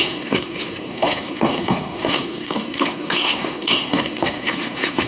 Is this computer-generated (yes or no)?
yes